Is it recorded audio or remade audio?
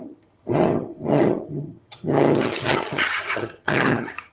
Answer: remade